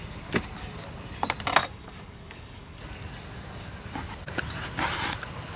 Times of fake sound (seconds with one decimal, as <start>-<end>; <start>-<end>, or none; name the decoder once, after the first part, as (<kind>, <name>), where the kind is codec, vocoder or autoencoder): 1.6-2.8 (codec, DAC)